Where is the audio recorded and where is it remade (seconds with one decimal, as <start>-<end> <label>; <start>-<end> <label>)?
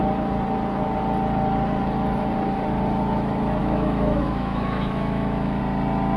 0.0-3.6 recorded; 3.6-5.6 remade; 5.6-6.2 recorded